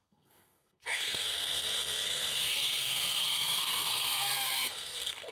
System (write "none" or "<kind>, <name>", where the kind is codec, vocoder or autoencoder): codec, SNAC